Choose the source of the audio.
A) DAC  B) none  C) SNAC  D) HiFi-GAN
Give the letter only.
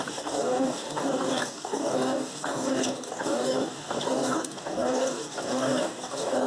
A